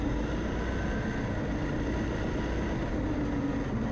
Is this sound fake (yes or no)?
no